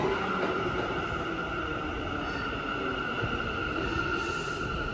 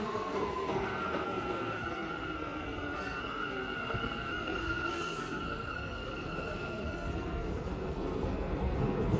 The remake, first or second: second